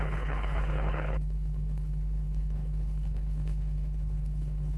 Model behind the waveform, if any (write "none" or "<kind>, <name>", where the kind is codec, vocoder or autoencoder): codec, HILCodec